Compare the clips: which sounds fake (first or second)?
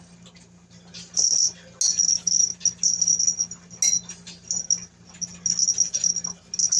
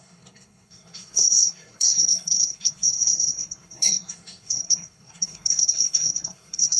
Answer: second